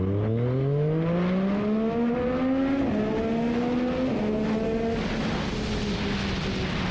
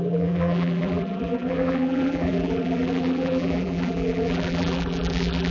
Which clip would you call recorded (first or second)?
first